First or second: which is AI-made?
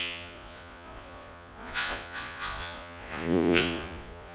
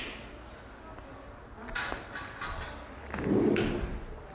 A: first